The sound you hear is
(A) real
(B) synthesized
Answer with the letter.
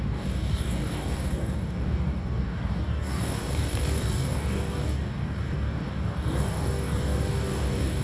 B